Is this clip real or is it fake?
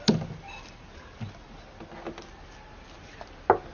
real